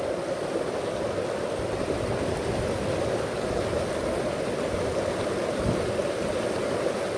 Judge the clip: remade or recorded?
recorded